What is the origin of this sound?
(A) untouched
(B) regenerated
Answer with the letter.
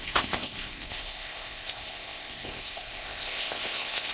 B